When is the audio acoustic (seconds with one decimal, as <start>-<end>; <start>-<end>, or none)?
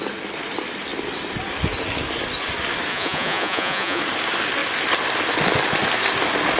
0.0-2.9; 4.0-6.6